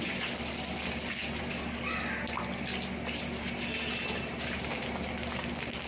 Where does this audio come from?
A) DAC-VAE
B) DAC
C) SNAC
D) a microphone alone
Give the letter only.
D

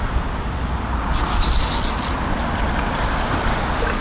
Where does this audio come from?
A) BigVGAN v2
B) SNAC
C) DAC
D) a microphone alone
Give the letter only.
A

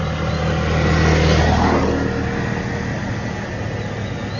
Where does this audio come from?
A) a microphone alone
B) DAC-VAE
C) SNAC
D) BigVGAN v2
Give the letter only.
A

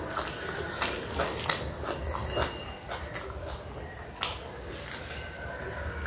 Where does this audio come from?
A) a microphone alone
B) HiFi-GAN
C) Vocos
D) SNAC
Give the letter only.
A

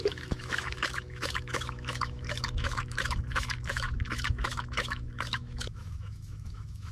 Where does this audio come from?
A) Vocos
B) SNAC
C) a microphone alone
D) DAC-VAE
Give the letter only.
D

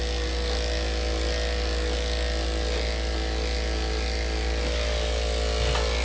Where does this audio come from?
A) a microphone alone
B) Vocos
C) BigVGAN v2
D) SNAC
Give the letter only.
A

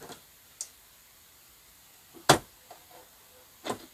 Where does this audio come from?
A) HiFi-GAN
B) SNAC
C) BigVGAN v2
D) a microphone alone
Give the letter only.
D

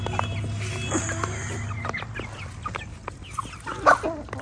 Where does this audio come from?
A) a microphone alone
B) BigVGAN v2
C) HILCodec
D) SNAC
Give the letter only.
A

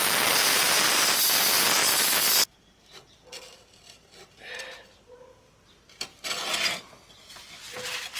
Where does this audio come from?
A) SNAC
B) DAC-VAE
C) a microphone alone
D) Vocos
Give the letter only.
C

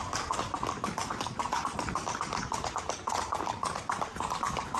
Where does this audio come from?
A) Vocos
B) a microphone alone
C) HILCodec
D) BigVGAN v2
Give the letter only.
B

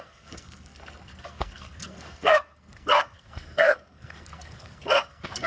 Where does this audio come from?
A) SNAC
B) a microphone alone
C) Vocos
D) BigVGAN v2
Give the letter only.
A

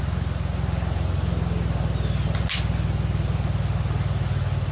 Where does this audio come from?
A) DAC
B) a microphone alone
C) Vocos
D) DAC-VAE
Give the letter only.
B